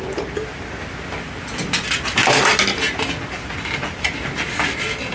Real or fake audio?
real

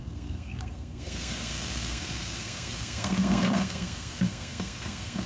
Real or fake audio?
fake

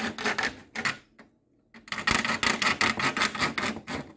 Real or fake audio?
real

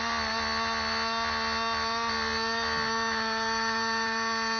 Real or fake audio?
real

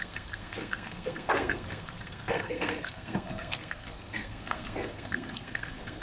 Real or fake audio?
fake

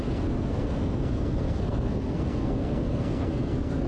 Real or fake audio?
fake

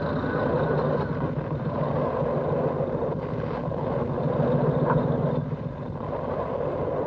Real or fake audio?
real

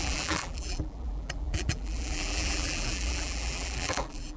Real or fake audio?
fake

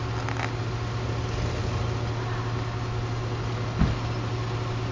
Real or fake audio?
real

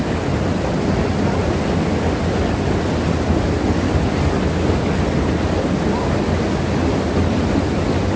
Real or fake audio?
real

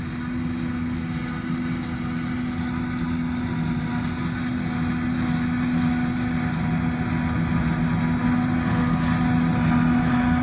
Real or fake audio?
real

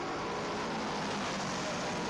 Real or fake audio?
real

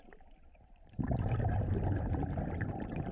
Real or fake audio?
real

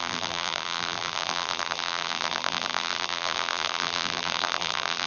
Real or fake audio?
fake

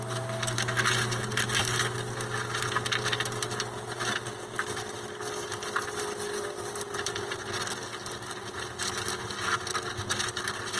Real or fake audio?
real